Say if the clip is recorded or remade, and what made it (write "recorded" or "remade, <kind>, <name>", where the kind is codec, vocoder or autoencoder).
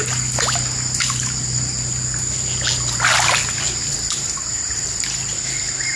recorded